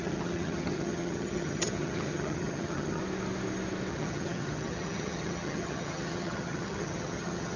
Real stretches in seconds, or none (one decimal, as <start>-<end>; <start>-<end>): 3.0-3.9